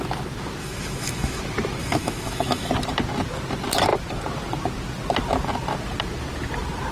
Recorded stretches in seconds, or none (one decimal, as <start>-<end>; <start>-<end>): 0.0-0.6; 1.4-1.8; 2.7-6.9